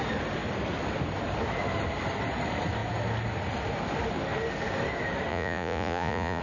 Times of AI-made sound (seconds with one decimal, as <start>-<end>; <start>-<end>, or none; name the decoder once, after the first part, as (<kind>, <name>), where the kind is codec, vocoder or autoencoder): 5.3-6.4 (vocoder, Vocos)

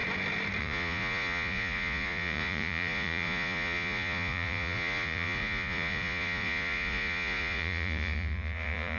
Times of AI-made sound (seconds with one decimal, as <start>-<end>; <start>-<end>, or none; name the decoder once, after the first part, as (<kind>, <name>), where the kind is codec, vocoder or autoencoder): 0.6-9.0 (vocoder, Vocos)

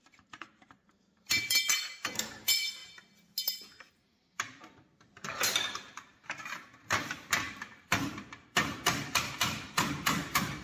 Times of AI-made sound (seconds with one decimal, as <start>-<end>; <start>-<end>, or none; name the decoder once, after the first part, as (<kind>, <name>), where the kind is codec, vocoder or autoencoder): 0.0-2.8 (vocoder, BigVGAN v2); 3.9-10.6